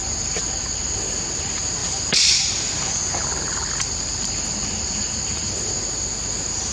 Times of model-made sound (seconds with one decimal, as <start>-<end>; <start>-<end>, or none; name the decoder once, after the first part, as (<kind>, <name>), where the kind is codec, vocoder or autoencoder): 1.8-5.8 (vocoder, BigVGAN v2)